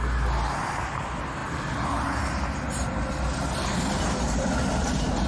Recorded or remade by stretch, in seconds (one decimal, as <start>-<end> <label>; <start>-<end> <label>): 0.0-5.3 recorded